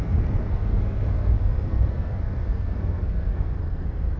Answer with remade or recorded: remade